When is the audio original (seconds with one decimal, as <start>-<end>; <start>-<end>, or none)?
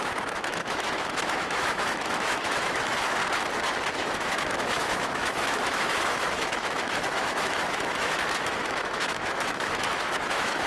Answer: 3.2-3.9